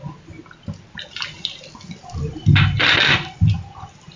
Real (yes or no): yes